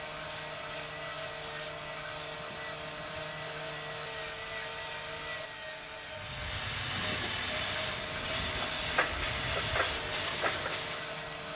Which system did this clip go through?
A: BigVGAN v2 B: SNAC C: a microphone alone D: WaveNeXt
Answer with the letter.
C